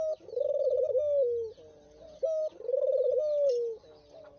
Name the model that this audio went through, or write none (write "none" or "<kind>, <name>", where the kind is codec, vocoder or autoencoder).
none